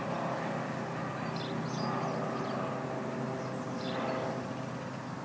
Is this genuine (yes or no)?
yes